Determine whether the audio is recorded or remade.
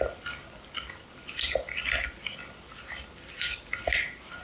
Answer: recorded